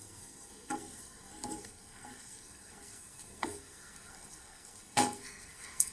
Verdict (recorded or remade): remade